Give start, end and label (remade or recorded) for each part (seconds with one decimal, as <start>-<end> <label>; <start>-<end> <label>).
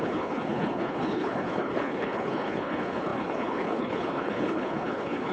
0.0-5.3 remade